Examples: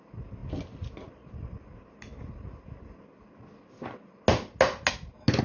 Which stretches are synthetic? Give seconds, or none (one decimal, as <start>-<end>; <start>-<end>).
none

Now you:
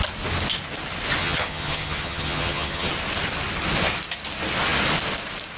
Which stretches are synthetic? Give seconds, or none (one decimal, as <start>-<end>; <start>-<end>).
1.2-2.9

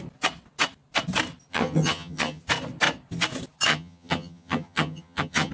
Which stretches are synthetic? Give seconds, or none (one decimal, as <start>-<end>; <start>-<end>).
1.5-2.4; 3.7-5.5

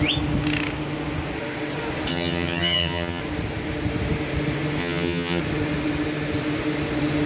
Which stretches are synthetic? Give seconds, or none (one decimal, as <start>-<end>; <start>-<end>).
2.1-3.2; 4.8-5.4